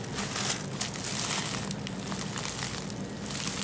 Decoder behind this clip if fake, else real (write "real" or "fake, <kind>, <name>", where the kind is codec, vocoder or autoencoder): real